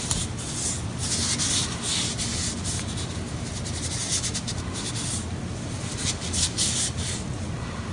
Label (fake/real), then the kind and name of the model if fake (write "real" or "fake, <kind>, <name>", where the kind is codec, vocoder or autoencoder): real